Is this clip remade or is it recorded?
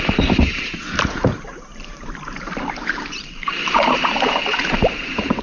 remade